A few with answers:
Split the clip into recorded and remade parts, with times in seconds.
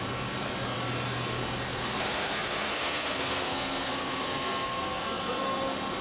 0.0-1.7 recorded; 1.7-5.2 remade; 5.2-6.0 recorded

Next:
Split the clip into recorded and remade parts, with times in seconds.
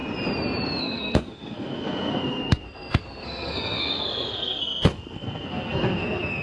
0.0-0.8 recorded; 0.8-6.4 remade